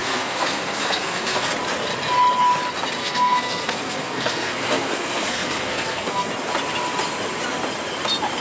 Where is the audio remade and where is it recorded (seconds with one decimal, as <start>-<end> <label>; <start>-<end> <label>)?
0.0-1.5 remade; 1.5-3.0 recorded; 3.0-6.3 remade; 6.3-8.4 recorded